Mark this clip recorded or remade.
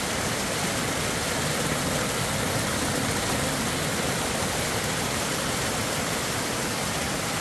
recorded